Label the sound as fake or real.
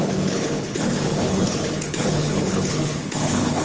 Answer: fake